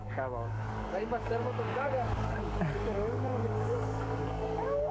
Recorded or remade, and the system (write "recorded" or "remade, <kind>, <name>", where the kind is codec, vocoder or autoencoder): remade, codec, DAC